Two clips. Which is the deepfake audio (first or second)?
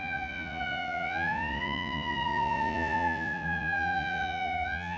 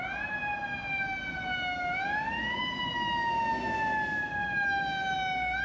first